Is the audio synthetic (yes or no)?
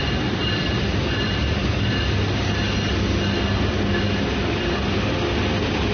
no